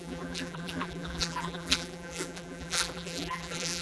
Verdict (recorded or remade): remade